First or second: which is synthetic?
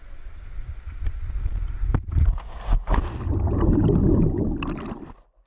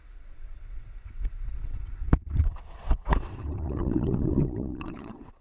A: second